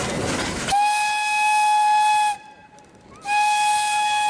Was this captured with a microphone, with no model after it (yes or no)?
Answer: yes